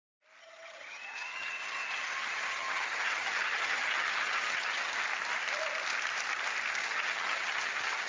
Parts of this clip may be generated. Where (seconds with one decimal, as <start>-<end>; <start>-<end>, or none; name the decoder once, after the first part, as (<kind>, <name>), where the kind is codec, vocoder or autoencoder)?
0.4-4.9 (vocoder, HiFi-GAN); 6.8-8.1